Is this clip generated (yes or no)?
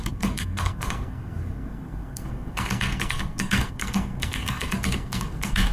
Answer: yes